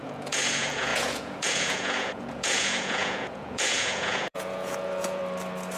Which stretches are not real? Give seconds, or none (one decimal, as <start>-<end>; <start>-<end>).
0.0-5.2